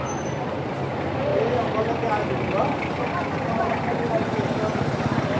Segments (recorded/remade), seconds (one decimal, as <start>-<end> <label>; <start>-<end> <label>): 0.0-5.4 recorded